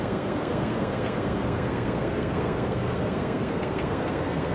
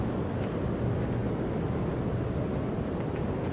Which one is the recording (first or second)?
second